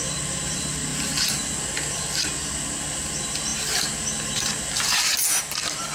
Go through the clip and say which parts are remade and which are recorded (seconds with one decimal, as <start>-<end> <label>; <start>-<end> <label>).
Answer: 0.0-5.9 recorded